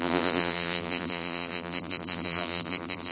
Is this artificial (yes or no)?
yes